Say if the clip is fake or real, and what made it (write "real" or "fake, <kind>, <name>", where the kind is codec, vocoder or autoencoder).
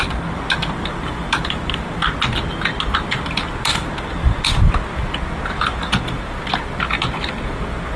real